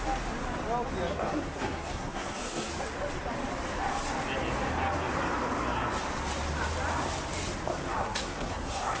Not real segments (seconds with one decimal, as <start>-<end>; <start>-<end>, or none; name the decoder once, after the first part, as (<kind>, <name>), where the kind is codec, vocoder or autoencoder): 1.1-2.7 (codec, SNAC); 7.7-9.0